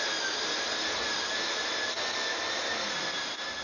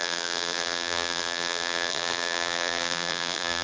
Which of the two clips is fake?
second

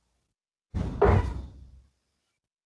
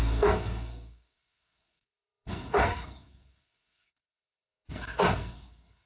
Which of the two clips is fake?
second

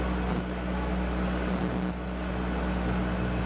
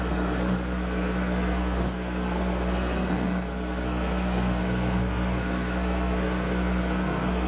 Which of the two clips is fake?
second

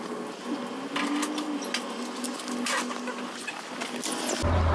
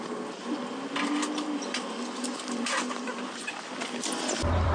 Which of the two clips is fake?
second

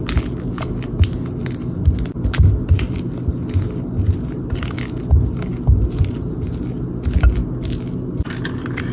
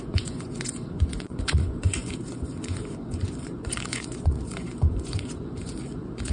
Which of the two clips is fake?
second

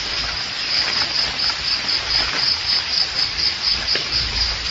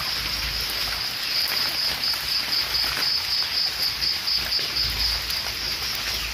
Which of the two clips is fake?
first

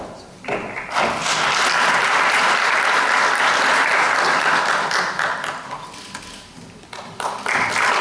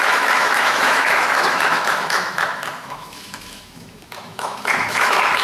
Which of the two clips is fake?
second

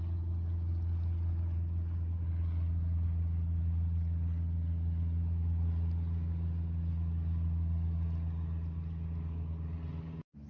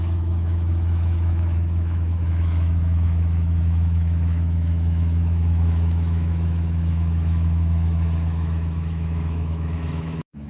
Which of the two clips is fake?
second